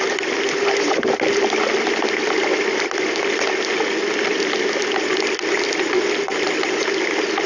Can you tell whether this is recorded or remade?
recorded